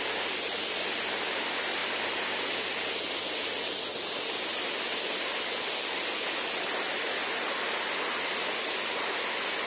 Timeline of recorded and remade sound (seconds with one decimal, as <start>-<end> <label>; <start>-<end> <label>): 0.0-9.7 recorded